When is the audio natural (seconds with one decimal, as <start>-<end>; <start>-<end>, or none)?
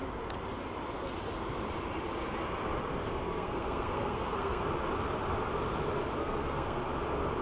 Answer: 0.0-2.9; 4.6-6.2; 6.8-7.4